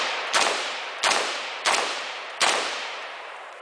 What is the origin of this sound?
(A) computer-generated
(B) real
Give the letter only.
A